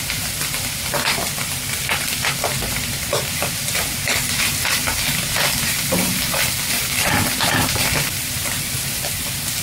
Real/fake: fake